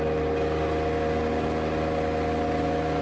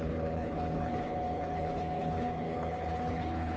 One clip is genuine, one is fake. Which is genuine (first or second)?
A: first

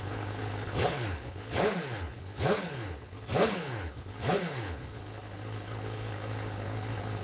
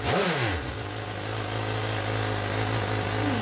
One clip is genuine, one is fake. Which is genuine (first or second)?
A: second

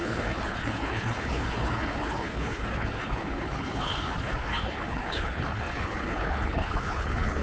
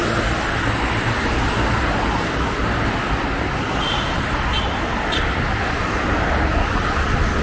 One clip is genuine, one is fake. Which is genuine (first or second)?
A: second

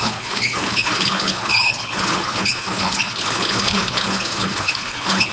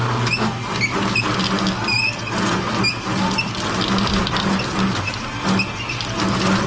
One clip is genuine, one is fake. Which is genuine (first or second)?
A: second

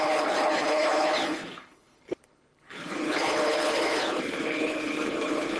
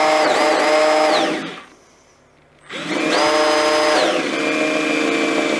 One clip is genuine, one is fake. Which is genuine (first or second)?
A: second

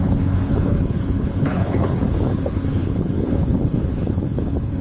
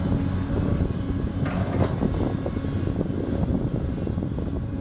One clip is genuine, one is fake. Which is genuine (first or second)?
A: second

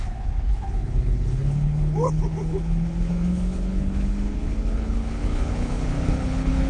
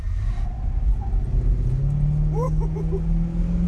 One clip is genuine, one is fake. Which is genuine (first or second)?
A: second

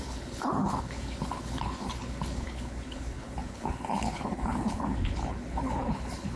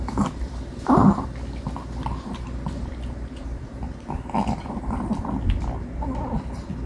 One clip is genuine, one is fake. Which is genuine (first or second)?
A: second